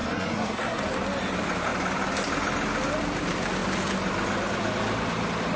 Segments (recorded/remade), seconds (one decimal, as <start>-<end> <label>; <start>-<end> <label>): 0.0-0.8 remade; 0.8-5.6 recorded